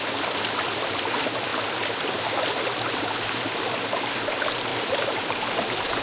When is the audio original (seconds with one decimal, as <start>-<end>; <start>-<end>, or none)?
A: 0.0-4.7